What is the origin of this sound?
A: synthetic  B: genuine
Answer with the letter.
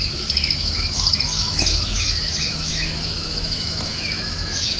A